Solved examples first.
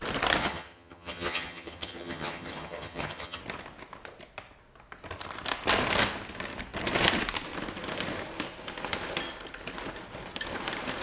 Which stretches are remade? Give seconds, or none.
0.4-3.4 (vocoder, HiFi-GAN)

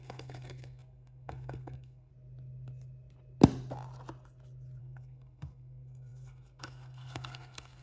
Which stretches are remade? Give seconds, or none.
0.0-2.1 (codec, SNAC); 4.8-7.8

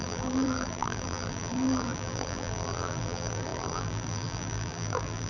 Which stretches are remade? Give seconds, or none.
0.0-5.3 (vocoder, BigVGAN v2)

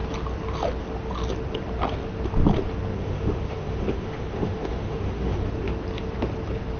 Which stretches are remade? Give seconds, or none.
3.0-5.5 (autoencoder, DAC-VAE)

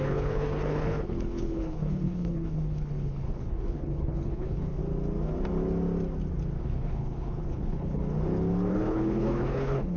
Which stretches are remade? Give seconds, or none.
0.0-4.8 (codec, HILCodec); 6.6-8.0; 8.7-10.0